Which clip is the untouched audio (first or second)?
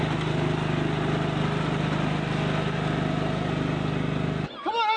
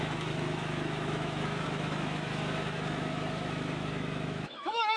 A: first